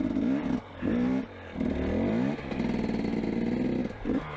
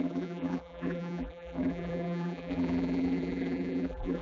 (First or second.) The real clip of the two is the first